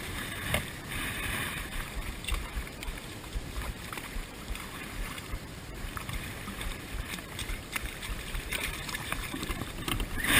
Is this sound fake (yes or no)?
yes